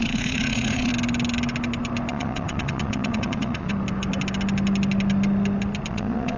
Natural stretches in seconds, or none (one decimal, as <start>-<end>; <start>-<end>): 0.9-2.1; 3.7-5.9